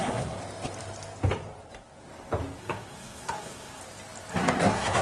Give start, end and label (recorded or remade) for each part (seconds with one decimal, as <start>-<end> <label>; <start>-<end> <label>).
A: 0.0-0.4 remade; 0.4-2.6 recorded; 2.6-3.8 remade; 3.8-4.3 recorded; 4.3-5.0 remade